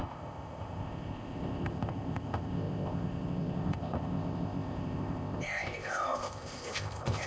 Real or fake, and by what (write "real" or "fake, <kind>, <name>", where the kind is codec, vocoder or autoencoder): fake, codec, ZipCodec